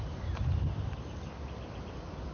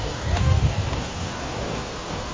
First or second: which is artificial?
second